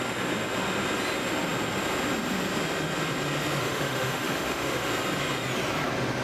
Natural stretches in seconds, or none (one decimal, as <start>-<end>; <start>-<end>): 0.0-3.6; 4.9-6.2